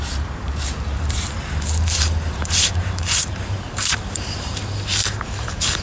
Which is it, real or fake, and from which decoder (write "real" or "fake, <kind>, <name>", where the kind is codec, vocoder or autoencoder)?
fake, vocoder, BigVGAN v2